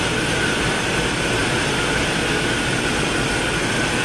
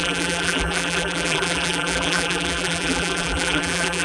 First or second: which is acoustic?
first